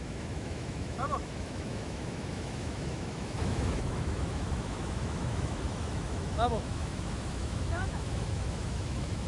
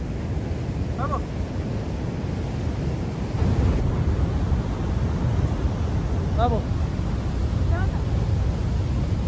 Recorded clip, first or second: second